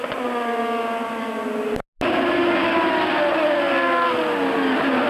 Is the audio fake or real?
real